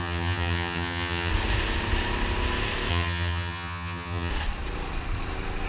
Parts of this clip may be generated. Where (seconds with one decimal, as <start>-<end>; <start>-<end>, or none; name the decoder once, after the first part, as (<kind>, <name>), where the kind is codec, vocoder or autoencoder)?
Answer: 0.0-1.3 (vocoder, HiFi-GAN); 2.9-4.3